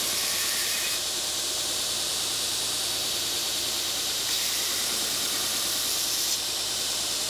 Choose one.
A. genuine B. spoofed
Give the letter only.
B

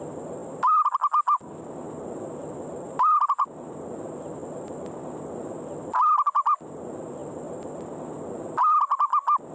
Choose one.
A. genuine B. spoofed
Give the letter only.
A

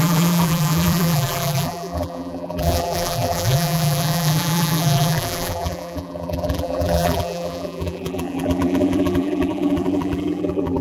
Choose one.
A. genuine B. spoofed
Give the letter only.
B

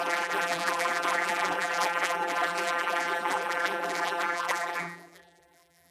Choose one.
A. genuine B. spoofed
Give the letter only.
B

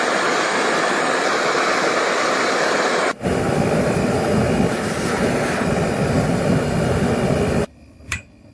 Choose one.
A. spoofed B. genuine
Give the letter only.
A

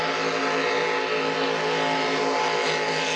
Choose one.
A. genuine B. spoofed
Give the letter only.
A